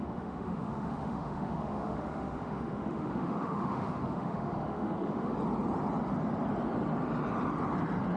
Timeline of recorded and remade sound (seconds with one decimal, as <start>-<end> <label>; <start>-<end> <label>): 0.0-5.3 remade; 5.3-8.2 recorded